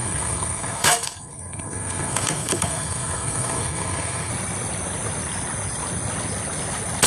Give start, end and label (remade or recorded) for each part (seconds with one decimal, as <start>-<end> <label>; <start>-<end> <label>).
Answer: 0.0-4.3 remade; 4.3-7.1 recorded